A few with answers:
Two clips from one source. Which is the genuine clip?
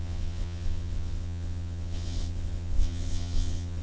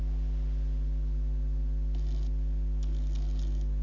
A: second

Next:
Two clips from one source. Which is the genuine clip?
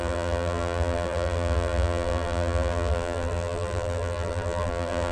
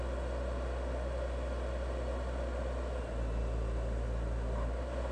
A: second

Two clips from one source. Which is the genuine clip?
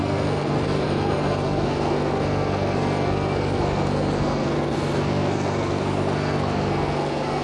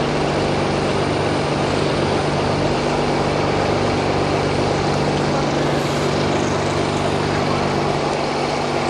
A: second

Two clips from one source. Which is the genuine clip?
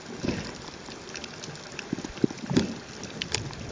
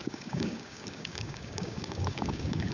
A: first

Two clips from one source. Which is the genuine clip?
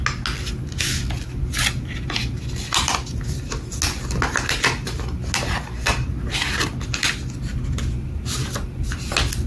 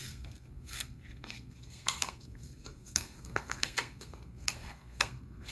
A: first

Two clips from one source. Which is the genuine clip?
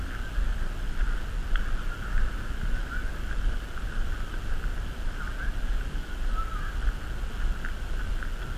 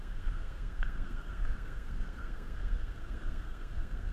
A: first